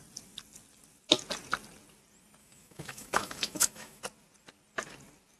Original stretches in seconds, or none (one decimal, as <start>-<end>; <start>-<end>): 0.0-2.4; 4.0-5.4

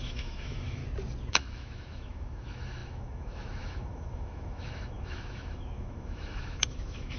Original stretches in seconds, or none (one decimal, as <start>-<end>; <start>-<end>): 0.8-1.3

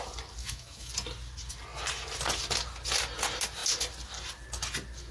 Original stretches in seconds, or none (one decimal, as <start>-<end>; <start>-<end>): 0.0-0.4; 0.9-5.1

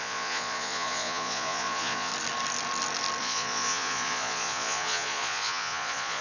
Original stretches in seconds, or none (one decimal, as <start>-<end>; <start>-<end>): 2.1-3.2

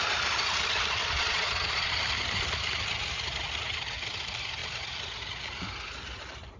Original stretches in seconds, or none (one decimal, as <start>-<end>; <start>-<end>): 0.0-1.0; 1.9-6.6

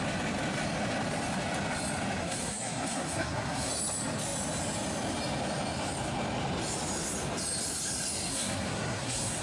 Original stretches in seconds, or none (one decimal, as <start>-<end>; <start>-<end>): 0.0-2.2; 3.7-8.3